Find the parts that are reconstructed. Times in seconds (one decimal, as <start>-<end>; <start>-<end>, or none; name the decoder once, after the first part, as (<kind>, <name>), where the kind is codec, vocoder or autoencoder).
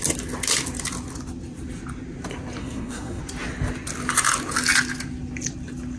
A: 2.6-3.2 (codec, SNAC)